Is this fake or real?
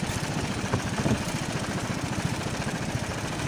fake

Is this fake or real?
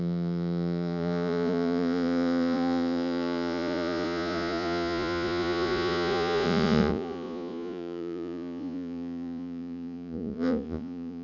fake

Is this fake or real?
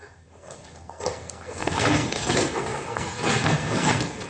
fake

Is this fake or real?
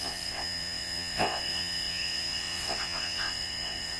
fake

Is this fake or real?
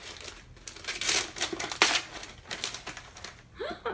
real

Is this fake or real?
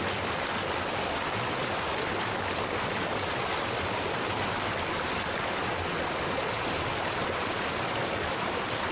real